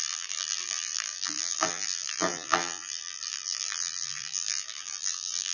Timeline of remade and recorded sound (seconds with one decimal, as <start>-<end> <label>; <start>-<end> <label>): 0.0-5.5 remade

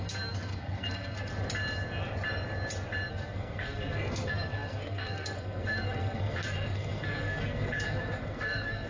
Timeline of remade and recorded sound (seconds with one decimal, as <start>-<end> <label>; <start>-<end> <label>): 0.0-1.3 remade; 1.3-3.1 recorded; 3.1-8.9 remade

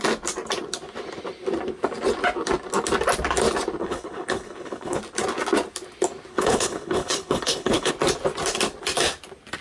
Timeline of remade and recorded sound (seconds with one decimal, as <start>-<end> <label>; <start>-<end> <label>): 0.0-3.8 recorded; 3.8-5.0 remade; 5.0-6.3 recorded; 6.3-7.9 remade; 7.9-9.6 recorded

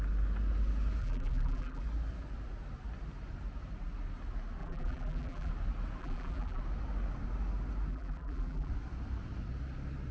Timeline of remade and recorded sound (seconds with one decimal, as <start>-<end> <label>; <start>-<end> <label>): 0.0-1.0 recorded; 1.0-1.8 remade; 1.8-4.6 recorded; 4.6-5.5 remade; 5.5-6.0 recorded; 6.0-6.6 remade; 6.6-7.9 recorded; 7.9-8.7 remade; 8.7-10.1 recorded

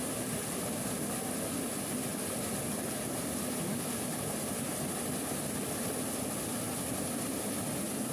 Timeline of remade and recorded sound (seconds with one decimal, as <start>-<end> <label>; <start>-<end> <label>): 0.0-8.1 recorded

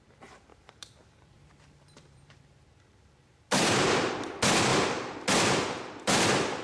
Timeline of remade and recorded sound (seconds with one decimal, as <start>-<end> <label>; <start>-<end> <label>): 0.0-0.5 recorded; 0.5-4.1 remade; 4.1-4.7 recorded; 4.7-5.3 remade; 5.3-6.6 recorded

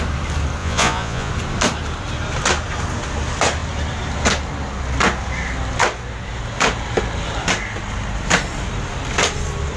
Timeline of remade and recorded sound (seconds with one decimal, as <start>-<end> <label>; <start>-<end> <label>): 0.0-0.6 recorded; 0.6-1.3 remade; 1.3-9.8 recorded

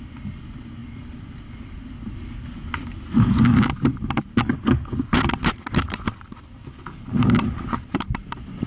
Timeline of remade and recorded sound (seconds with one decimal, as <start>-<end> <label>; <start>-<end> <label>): 0.0-8.7 recorded